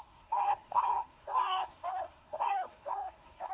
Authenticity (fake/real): fake